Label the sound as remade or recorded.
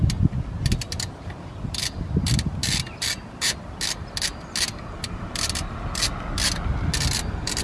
recorded